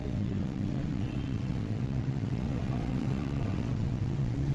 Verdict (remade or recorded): remade